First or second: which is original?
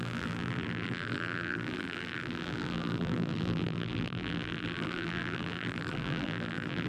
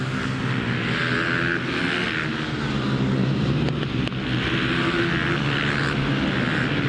second